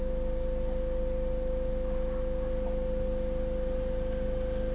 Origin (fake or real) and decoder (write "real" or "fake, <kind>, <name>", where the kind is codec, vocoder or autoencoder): real